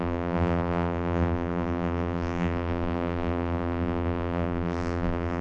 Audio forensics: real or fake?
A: fake